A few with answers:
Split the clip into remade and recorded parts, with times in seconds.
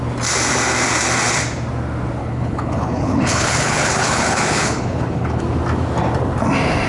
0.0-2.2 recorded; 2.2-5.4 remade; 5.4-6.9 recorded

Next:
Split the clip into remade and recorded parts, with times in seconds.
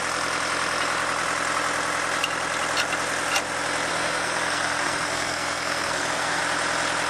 0.0-3.9 recorded; 3.9-6.4 remade; 6.4-7.1 recorded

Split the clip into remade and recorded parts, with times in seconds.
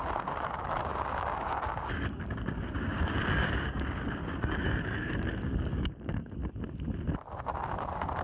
0.0-6.4 remade; 6.4-7.4 recorded; 7.4-8.2 remade